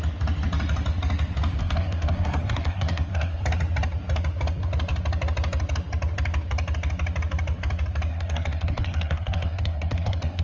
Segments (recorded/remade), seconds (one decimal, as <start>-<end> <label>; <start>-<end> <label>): 0.0-1.6 recorded; 1.6-3.4 remade; 3.4-8.1 recorded; 8.1-10.4 remade